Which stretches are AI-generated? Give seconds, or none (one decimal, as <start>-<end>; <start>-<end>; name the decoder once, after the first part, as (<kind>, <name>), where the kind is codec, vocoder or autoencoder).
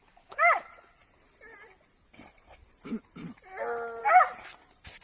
none